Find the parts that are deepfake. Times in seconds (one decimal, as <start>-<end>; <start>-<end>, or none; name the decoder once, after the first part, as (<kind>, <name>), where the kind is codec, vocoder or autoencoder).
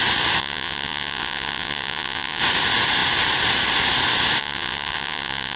0.4-2.4 (vocoder, WaveNeXt); 4.4-5.6